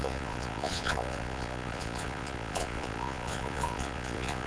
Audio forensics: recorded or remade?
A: remade